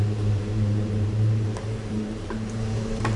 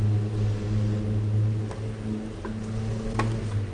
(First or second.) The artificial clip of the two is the first